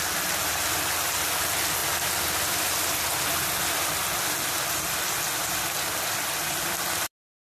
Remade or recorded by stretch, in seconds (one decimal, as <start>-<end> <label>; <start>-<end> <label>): 0.0-7.5 recorded